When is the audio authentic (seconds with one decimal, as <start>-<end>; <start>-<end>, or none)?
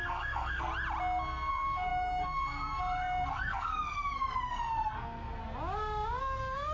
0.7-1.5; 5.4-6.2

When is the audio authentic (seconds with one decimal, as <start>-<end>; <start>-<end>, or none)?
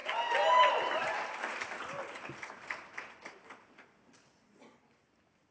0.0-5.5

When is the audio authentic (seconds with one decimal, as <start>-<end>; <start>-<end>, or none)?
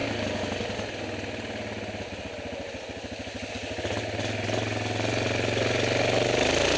0.0-6.8